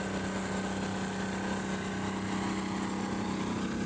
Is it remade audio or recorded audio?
recorded